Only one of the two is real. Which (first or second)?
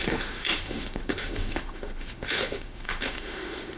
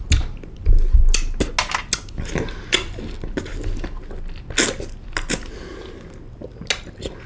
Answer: second